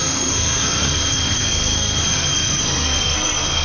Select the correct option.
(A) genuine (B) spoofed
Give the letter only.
B